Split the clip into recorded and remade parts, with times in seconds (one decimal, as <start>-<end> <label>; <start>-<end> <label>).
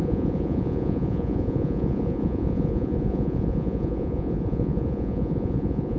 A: 0.0-6.0 remade